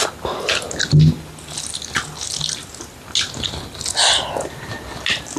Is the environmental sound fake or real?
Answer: real